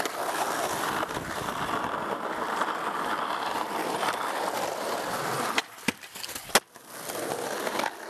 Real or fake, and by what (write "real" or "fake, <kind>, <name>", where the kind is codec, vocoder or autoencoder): real